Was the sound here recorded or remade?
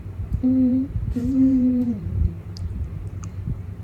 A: remade